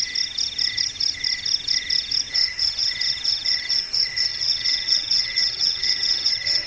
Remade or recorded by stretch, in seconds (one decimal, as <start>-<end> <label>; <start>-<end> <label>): 0.0-4.3 recorded; 4.3-6.3 remade; 6.3-6.7 recorded